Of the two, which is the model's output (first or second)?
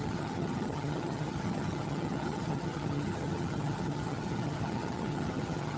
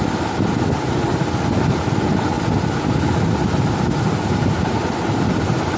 first